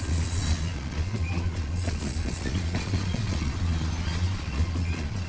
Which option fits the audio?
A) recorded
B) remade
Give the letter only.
B